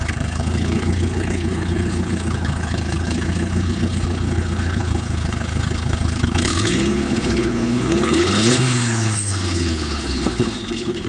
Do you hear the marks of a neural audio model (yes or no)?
yes